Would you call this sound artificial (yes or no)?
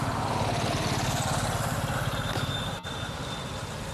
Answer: no